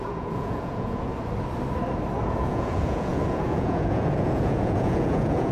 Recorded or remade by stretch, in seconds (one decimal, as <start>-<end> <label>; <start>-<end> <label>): 0.0-1.1 remade; 1.1-2.2 recorded; 2.2-5.5 remade